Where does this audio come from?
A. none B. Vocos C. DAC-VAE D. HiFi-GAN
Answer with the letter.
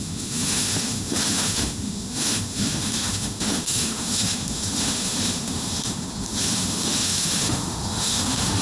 C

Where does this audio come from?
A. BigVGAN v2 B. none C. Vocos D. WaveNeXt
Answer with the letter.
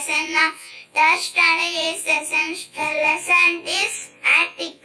C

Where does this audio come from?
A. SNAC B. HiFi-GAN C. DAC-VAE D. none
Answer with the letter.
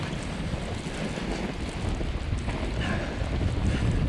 D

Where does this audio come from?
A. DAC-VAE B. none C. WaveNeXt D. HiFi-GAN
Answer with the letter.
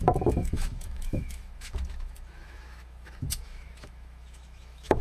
A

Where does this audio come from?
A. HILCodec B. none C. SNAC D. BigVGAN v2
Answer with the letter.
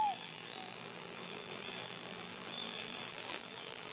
D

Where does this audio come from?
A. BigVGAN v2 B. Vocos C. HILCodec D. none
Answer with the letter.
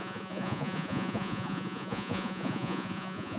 B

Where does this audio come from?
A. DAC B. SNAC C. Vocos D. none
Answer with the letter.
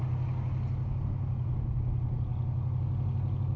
D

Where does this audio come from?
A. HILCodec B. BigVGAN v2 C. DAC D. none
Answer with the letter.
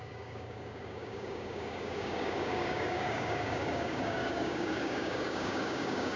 C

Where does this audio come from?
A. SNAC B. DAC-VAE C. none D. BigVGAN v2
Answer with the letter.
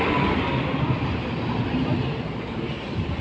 C